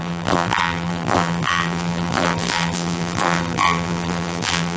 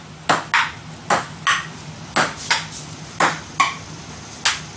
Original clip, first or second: second